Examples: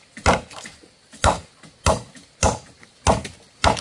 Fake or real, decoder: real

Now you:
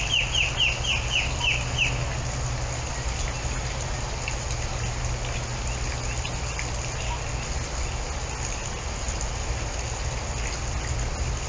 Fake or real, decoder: real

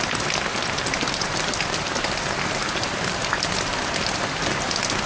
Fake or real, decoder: real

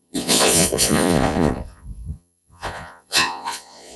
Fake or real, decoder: fake, vocoder, Vocos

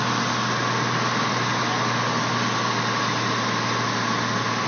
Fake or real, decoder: real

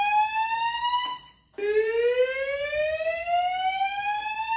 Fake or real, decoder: real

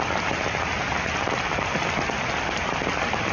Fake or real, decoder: real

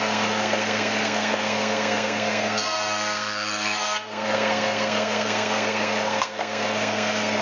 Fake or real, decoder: fake, codec, SNAC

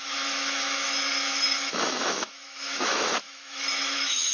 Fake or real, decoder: fake, autoencoder, DAC-VAE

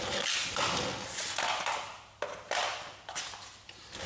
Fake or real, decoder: real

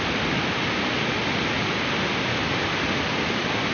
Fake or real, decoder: real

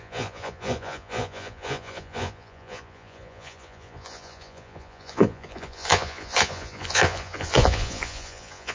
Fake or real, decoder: fake, vocoder, Vocos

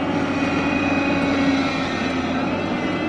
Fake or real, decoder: real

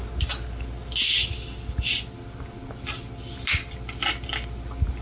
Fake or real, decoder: real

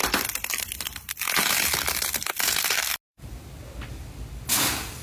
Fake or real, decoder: real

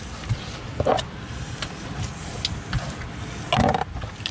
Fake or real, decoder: real